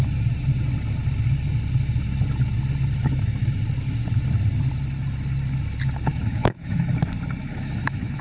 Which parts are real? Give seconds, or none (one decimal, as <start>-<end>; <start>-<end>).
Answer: 0.0-3.0; 3.6-6.1; 6.8-7.4